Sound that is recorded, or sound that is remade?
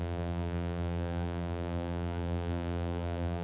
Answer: remade